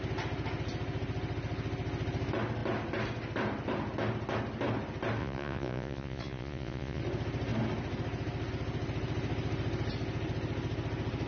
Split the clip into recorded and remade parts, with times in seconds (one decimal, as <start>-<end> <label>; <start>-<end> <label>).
0.0-5.2 recorded; 5.2-7.0 remade; 7.0-11.3 recorded